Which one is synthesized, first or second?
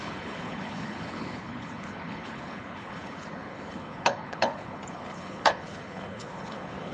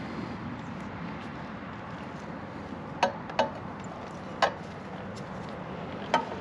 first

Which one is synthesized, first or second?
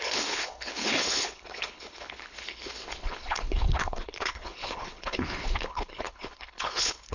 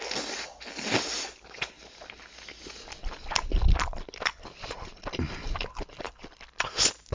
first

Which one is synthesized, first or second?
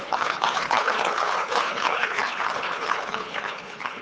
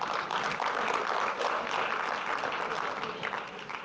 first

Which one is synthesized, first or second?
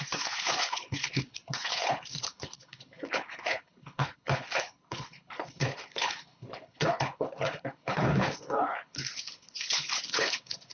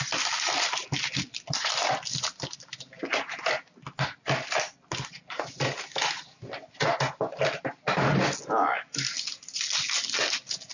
first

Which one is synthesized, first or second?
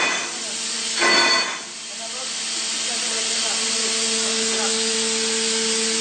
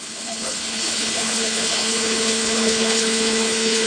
second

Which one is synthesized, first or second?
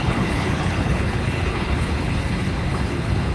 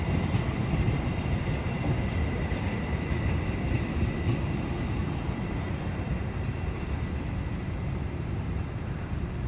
first